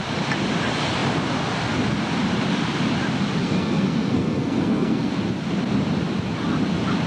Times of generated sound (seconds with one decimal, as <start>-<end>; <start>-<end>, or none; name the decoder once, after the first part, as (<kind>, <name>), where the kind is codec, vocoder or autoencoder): 3.4-5.1 (codec, SNAC)